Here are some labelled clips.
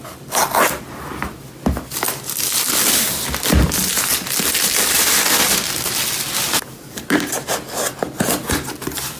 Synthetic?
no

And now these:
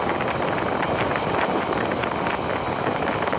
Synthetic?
no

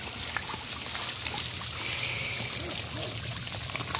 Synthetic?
no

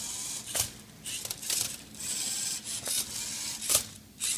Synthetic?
no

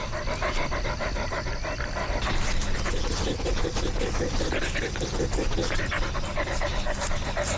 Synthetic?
no